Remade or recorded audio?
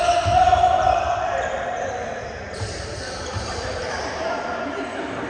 remade